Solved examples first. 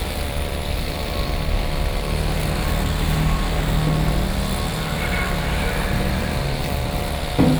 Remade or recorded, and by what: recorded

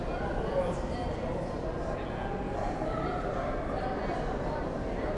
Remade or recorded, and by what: recorded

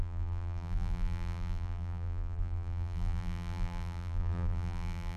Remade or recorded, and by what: remade, vocoder, BigVGAN v2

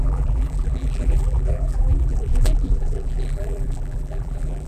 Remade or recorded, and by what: remade, vocoder, BigVGAN v2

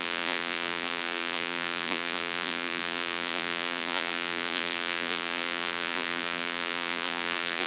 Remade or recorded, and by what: remade, vocoder, BigVGAN v2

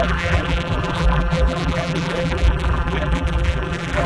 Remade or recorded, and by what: remade, vocoder, BigVGAN v2